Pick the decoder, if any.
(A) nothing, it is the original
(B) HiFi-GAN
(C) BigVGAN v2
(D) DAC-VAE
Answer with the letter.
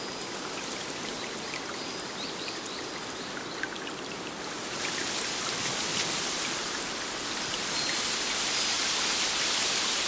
A